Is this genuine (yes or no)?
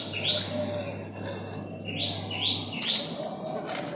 yes